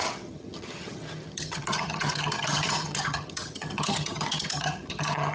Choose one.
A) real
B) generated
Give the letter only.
B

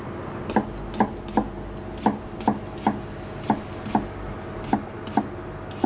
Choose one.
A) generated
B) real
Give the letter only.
B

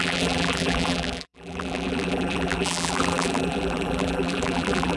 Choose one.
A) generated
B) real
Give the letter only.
A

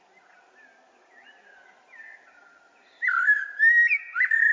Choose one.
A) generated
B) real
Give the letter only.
B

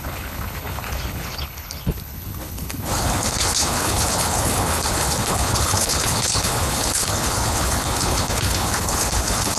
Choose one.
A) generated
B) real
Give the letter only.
A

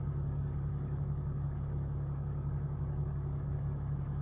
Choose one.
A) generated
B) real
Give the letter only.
A